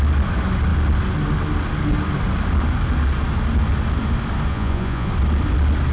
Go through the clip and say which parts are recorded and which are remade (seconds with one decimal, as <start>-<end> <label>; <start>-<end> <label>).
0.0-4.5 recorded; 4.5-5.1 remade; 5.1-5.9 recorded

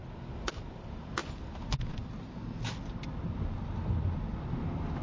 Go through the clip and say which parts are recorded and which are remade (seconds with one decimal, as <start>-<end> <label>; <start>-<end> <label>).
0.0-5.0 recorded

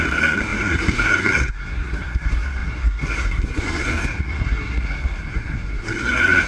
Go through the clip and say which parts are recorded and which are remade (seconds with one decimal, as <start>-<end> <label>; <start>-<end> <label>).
0.0-6.5 remade

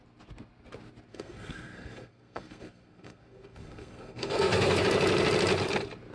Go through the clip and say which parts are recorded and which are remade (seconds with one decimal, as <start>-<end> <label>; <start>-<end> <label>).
0.0-1.1 recorded; 1.1-4.8 remade; 4.8-6.1 recorded